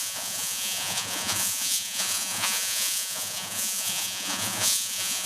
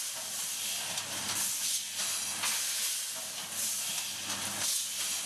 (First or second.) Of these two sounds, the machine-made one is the first